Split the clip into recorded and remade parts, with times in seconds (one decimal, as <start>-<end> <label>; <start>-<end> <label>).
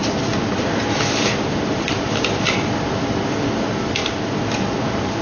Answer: 0.0-3.1 remade; 3.1-4.0 recorded; 4.0-4.5 remade; 4.5-5.2 recorded